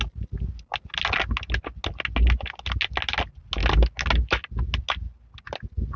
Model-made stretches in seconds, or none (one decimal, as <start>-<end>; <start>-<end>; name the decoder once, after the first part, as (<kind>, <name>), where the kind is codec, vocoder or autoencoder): none